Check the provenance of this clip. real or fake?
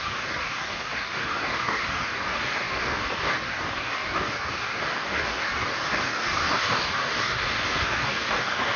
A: fake